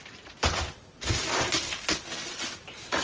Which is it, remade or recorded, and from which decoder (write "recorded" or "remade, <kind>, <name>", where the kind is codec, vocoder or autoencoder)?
recorded